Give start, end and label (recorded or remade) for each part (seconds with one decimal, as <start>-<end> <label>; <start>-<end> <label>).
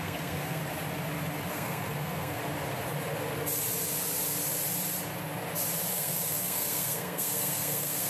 0.0-0.6 remade; 0.6-1.5 recorded; 1.5-2.4 remade; 2.4-5.9 recorded; 5.9-8.1 remade